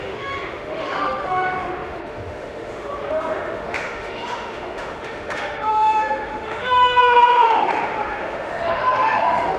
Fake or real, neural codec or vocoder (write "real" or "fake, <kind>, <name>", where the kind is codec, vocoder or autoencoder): fake, autoencoder, DAC-VAE